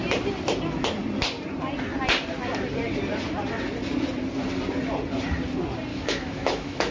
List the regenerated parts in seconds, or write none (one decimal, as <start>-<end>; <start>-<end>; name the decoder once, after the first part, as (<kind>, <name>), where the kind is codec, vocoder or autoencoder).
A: 5.9-6.9 (autoencoder, DAC-VAE)